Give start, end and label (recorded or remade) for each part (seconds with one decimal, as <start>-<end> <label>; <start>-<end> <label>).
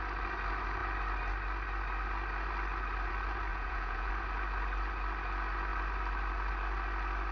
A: 0.0-3.5 recorded; 3.5-4.1 remade; 4.1-7.3 recorded